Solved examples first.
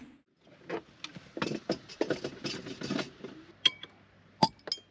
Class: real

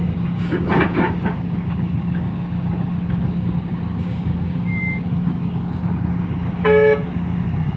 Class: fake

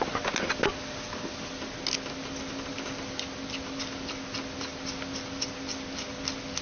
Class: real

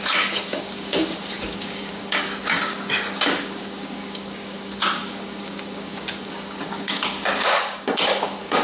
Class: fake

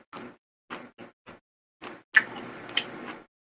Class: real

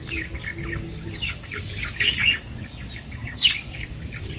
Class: fake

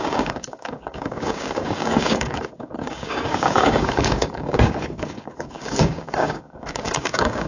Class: fake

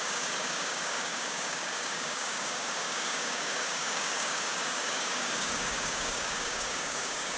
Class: fake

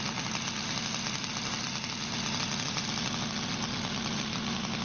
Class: real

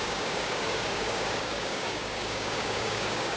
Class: fake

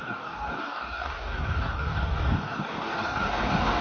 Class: fake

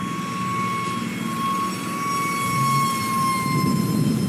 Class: real